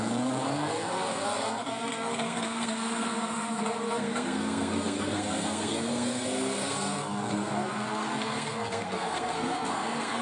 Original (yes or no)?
no